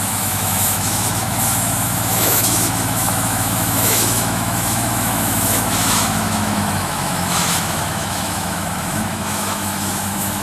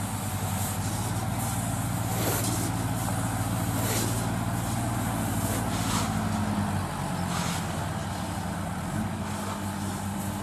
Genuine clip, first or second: second